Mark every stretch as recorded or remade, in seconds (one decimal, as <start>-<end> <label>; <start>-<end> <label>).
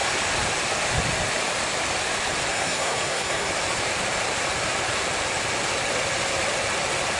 0.0-2.5 recorded; 2.5-3.5 remade; 3.5-7.2 recorded